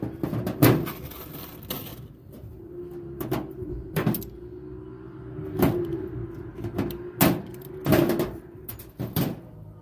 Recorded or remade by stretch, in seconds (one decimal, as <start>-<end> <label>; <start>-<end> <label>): 0.0-9.8 recorded